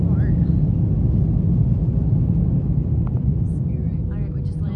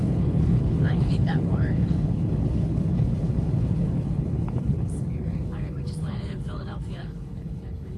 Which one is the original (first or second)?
first